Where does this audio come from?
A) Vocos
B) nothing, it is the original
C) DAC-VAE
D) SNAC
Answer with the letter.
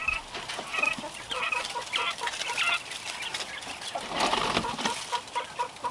B